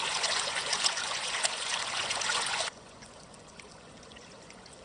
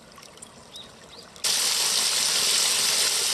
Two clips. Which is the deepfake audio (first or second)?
first